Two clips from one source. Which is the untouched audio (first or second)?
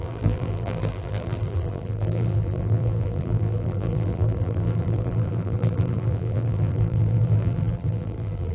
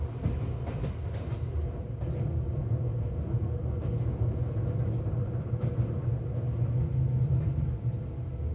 second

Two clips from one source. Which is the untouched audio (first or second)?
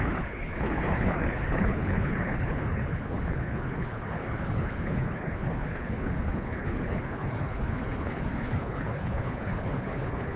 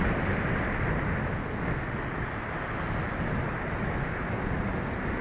second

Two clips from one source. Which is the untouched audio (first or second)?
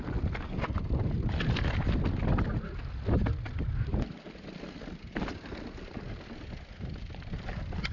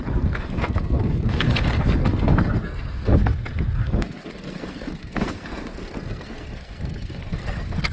first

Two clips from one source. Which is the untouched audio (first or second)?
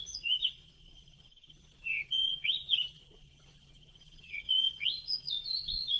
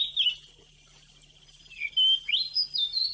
second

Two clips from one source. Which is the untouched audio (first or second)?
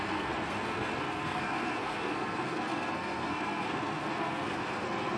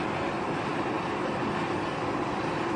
second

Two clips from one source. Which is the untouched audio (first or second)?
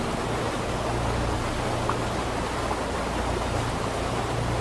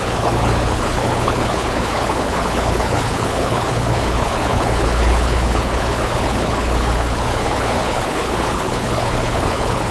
first